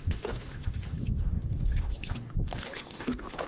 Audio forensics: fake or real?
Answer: fake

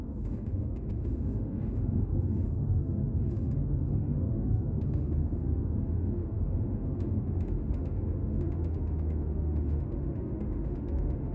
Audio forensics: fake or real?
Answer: fake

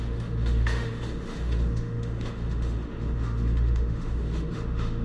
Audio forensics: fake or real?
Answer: fake